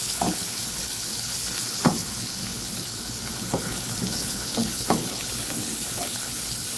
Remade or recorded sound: remade